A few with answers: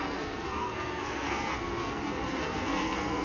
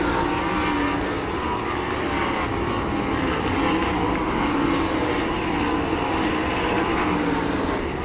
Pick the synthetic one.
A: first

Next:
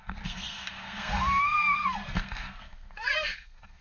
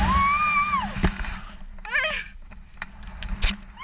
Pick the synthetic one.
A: first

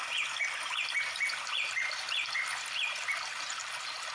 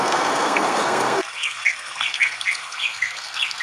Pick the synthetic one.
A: second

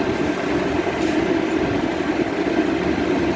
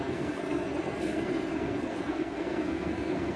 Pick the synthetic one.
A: second